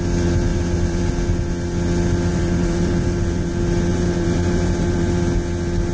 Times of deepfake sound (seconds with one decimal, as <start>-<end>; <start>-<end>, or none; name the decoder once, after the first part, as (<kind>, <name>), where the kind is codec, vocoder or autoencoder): 0.5-1.1 (vocoder, BigVGAN v2); 2.3-3.5; 3.9-5.2